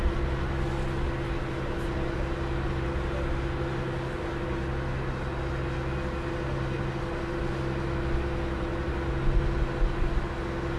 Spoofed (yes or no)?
no